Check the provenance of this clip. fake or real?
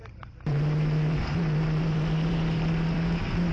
fake